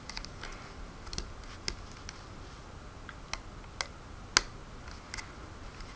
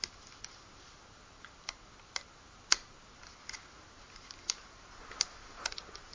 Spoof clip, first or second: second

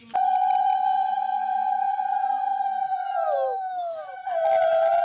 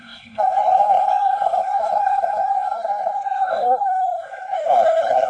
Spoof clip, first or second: second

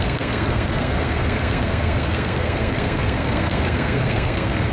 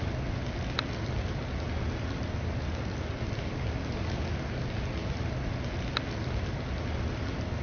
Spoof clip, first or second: first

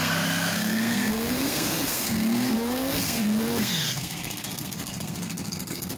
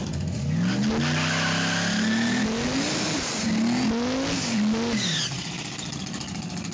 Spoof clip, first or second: first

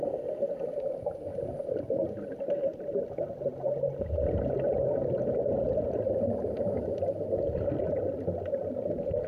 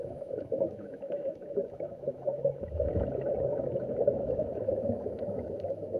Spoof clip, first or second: second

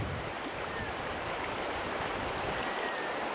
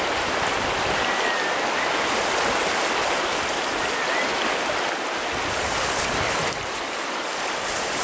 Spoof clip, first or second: first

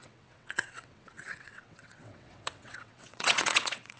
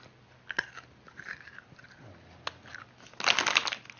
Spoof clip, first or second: first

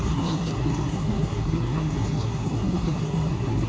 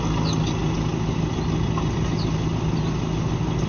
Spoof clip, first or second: first